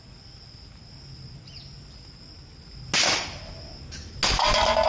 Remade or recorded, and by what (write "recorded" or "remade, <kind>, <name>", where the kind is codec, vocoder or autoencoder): recorded